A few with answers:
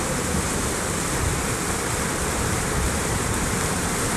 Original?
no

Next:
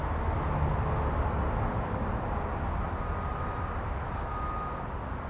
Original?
yes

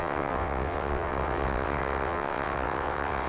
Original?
no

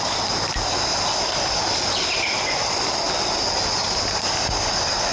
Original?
yes